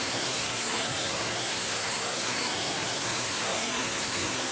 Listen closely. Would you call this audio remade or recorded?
remade